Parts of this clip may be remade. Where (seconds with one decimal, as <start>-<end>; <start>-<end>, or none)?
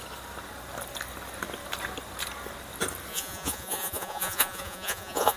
3.1-5.4